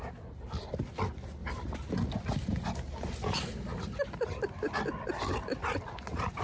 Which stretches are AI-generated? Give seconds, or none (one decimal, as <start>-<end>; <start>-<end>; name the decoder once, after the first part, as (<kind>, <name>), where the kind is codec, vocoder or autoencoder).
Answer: none